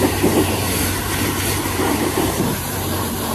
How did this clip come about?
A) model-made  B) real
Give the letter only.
A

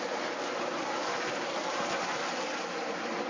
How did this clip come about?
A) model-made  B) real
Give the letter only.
A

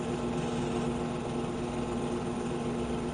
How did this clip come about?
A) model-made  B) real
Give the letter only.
B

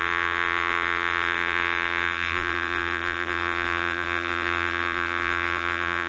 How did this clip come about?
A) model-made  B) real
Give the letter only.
A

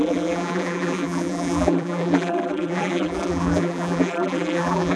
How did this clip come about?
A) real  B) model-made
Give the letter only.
B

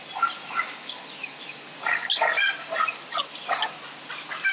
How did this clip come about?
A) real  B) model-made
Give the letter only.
A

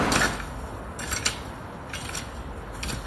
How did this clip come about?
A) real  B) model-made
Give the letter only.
A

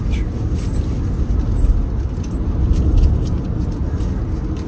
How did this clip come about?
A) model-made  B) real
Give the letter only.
B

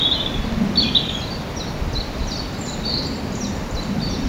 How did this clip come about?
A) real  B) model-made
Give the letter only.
A